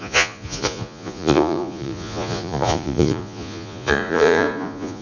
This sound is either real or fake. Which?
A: fake